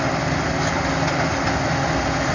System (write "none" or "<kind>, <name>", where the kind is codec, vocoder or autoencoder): none